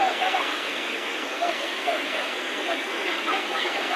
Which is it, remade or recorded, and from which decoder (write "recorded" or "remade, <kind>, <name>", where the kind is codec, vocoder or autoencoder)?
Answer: remade, codec, SNAC